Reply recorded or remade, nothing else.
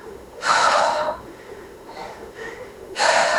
remade